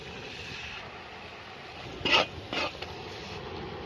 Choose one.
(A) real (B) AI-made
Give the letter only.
A